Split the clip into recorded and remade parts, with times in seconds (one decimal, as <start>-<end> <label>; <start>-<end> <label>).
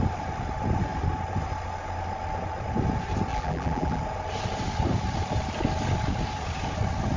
0.0-3.3 recorded; 3.3-4.0 remade; 4.0-7.2 recorded